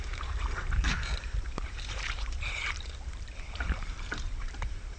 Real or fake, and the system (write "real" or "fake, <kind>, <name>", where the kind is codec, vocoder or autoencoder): fake, vocoder, BigVGAN v2